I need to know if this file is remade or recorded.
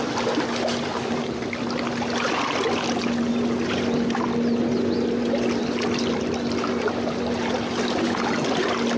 recorded